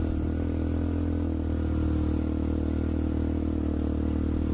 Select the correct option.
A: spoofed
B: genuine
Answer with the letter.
B